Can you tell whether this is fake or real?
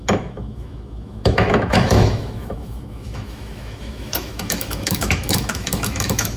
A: fake